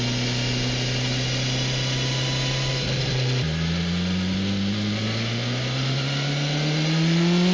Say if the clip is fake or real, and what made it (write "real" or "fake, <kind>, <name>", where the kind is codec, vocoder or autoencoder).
real